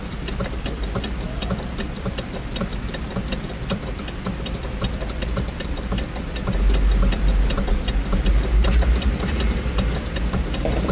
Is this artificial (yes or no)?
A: no